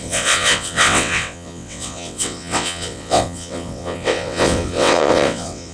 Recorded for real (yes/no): no